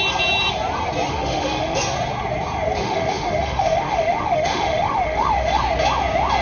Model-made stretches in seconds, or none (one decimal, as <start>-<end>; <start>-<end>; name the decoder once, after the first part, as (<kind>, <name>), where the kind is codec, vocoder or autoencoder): 1.1-1.8 (autoencoder, DAC-VAE); 2.8-5.6

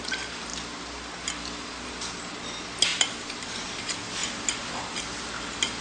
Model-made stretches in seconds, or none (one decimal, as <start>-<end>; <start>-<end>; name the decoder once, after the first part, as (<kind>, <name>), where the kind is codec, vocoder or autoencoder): none

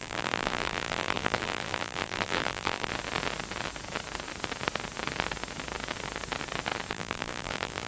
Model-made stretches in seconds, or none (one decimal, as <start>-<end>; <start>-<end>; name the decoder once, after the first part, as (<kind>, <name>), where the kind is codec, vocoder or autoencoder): 0.0-2.9 (vocoder, BigVGAN v2); 6.9-7.9